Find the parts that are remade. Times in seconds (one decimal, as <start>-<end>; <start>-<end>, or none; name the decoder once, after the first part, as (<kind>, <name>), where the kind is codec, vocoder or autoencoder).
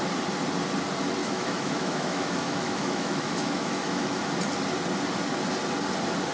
1.2-4.2 (autoencoder, DAC-VAE)